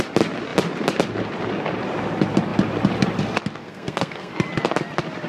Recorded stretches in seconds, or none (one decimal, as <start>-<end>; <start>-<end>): 0.0-3.6; 4.3-5.3